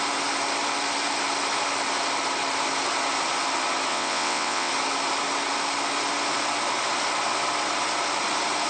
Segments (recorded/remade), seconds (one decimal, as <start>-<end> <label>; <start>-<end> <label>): 0.0-3.9 recorded; 3.9-4.7 remade; 4.7-8.7 recorded